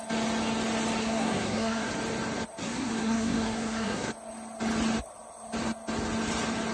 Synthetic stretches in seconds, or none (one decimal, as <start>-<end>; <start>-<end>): 1.0-1.9; 2.6-4.1